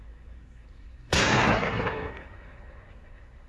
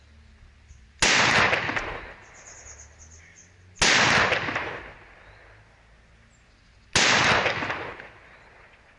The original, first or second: second